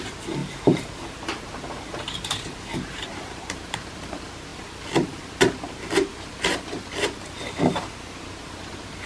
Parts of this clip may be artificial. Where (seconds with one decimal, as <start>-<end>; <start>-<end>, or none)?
2.7-3.9

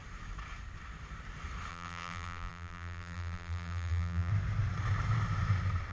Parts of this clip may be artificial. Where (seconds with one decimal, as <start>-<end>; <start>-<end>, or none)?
1.7-4.3

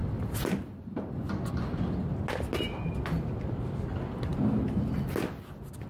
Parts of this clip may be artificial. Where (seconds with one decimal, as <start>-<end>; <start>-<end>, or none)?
4.3-4.9

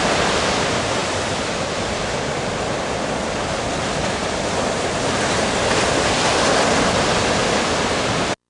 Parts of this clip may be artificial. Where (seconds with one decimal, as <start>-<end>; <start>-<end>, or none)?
1.0-2.0; 7.4-8.1

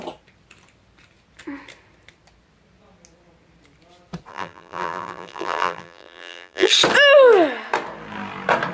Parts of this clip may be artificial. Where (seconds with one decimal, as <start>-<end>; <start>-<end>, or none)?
4.3-6.7

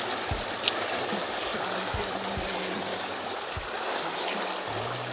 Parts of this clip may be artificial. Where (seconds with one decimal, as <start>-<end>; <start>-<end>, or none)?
1.5-4.2

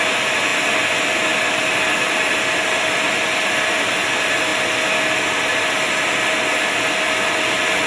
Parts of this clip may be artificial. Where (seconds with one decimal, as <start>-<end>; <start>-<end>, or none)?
none

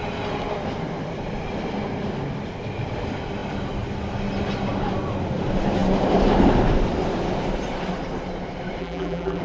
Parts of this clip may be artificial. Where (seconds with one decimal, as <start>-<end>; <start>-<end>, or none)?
8.8-9.4